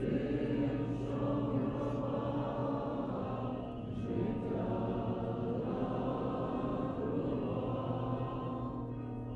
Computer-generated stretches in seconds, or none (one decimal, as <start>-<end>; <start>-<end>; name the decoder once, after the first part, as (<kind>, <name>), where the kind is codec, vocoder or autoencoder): 2.6-3.6 (vocoder, BigVGAN v2); 6.7-7.9

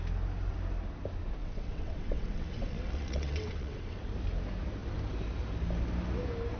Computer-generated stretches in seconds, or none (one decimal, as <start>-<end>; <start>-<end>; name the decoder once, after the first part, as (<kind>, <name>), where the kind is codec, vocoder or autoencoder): 1.4-4.0 (vocoder, WaveNeXt)

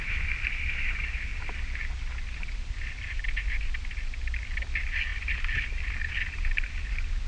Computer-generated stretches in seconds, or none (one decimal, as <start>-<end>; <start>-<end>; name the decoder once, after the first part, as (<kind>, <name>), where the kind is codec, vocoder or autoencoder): none

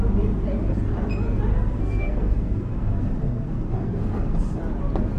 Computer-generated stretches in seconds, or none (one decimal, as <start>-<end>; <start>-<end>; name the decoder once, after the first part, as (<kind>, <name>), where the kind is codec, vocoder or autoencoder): 1.5-4.6 (codec, SNAC)

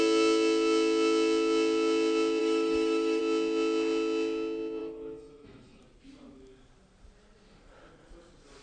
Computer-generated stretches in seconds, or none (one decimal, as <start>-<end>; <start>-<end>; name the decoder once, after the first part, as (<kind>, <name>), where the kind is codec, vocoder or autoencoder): 2.4-3.2 (autoencoder, DAC-VAE); 4.8-5.8

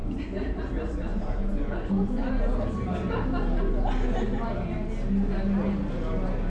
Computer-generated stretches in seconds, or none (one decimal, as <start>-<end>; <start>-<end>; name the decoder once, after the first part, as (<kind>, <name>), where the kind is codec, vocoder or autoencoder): 0.0-0.7 (vocoder, BigVGAN v2); 1.1-2.3

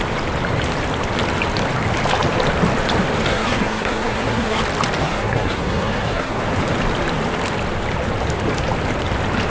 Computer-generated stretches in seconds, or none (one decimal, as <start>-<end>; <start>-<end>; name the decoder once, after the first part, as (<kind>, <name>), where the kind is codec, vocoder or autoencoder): 3.3-4.6 (codec, SNAC); 5.0-6.4